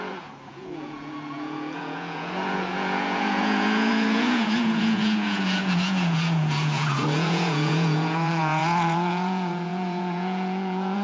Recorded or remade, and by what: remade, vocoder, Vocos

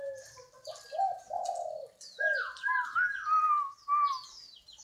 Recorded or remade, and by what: recorded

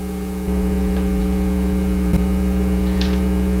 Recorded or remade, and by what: remade, vocoder, Vocos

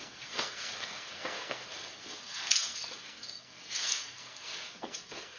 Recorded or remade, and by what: remade, codec, SNAC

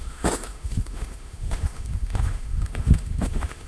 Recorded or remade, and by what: remade, autoencoder, DAC-VAE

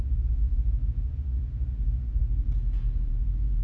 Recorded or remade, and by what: remade, vocoder, Vocos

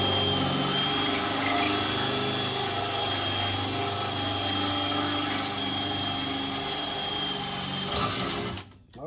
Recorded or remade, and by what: recorded